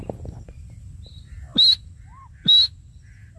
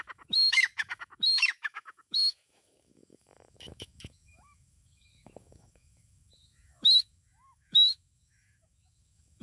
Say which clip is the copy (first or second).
second